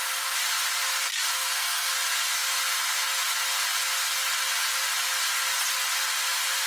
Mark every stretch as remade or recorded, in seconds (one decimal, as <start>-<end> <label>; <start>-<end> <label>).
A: 0.0-1.3 recorded; 1.3-1.9 remade; 1.9-6.7 recorded